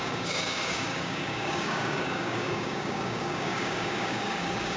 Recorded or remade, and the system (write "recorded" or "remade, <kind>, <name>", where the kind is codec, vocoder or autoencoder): remade, codec, DAC